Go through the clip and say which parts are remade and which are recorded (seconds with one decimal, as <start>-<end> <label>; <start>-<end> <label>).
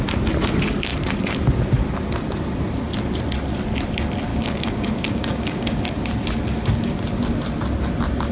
0.0-4.3 recorded; 4.3-5.8 remade; 5.8-8.3 recorded